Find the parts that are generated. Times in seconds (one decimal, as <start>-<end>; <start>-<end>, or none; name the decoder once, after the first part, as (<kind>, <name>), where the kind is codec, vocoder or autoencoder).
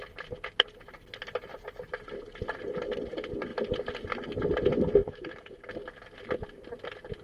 5.0-5.7 (autoencoder, DAC-VAE)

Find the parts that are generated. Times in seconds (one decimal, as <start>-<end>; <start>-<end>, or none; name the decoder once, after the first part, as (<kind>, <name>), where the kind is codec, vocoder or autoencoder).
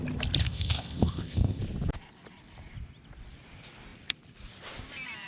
0.4-1.6 (codec, ZipCodec)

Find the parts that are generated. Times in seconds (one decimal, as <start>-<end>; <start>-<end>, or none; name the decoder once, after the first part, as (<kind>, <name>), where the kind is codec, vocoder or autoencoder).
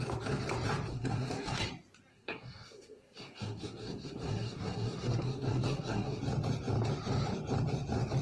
0.9-1.7 (codec, SNAC); 2.1-6.2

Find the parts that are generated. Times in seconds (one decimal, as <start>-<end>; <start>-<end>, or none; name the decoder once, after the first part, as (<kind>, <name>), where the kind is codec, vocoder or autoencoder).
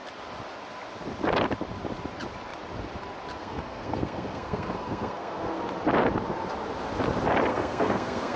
3.4-5.6 (codec, SNAC); 7.5-8.4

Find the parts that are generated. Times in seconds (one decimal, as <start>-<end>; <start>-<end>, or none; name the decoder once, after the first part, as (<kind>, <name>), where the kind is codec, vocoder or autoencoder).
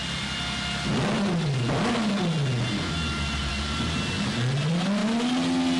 none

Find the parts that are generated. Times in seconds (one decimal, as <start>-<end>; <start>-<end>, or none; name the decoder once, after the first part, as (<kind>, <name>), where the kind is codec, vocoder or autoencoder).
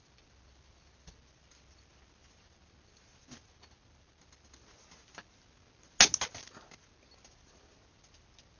none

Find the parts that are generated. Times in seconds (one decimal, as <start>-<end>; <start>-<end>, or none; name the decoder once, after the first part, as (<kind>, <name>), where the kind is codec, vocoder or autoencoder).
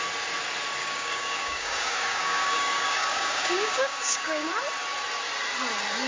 0.8-4.5 (codec, DAC)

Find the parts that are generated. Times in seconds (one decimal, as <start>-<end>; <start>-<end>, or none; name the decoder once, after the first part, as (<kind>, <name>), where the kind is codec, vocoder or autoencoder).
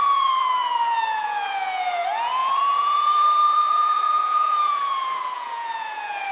0.0-6.3 (vocoder, Vocos)